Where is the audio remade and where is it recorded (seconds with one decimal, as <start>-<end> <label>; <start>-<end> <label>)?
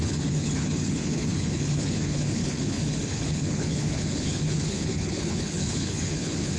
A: 0.0-6.6 remade